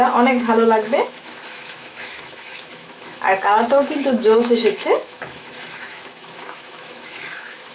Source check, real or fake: fake